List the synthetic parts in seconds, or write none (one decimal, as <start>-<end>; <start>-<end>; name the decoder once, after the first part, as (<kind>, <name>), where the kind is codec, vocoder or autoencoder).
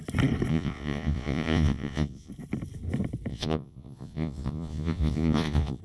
0.5-2.3 (vocoder, Vocos); 3.3-5.8